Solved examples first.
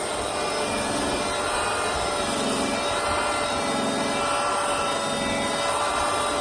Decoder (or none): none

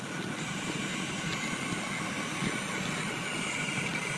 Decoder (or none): none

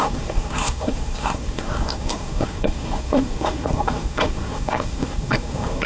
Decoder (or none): codec, SNAC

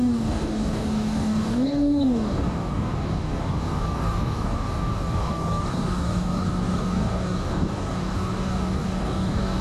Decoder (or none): codec, DAC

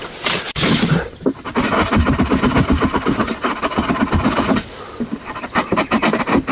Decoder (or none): none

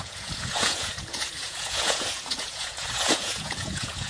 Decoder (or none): vocoder, Vocos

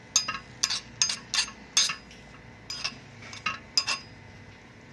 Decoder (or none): none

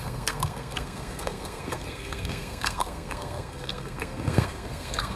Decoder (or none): codec, SNAC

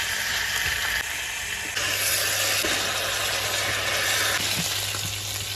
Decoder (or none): none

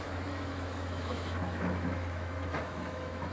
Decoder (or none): autoencoder, DAC-VAE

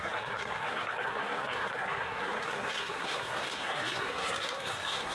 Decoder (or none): codec, SNAC